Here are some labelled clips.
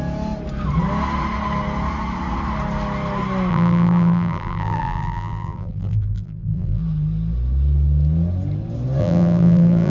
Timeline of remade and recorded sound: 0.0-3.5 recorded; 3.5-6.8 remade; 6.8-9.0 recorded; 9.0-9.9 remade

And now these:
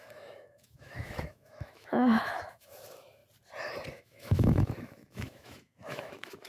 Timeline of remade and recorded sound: 0.0-3.2 remade; 3.2-3.9 recorded; 3.9-6.5 remade

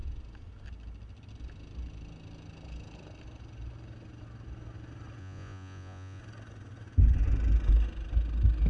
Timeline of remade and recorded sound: 0.0-5.2 recorded; 5.2-6.2 remade; 6.2-8.7 recorded

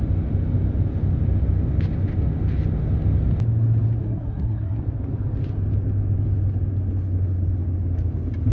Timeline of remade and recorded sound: 0.0-4.0 recorded; 4.0-4.8 remade; 4.8-8.5 recorded

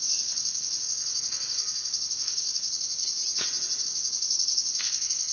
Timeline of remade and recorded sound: 0.0-3.2 remade; 3.2-3.8 recorded; 3.8-5.3 remade

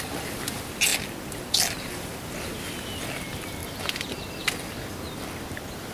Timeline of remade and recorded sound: 0.0-5.9 recorded

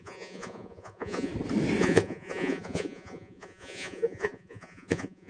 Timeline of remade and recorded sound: 0.0-1.3 remade; 1.3-1.8 recorded; 1.8-5.3 remade

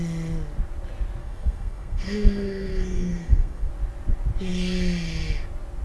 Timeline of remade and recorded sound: 0.0-1.2 recorded; 1.2-3.7 remade; 3.7-5.8 recorded